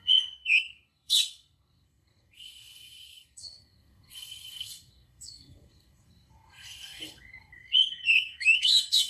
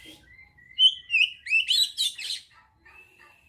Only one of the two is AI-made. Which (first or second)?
first